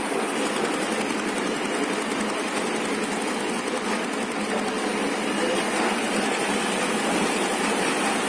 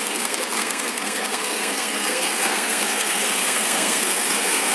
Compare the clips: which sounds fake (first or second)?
second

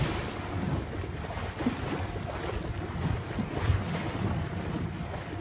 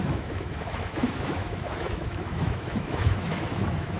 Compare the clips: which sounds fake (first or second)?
second